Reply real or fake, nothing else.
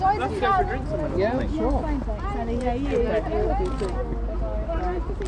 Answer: real